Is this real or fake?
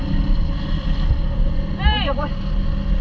real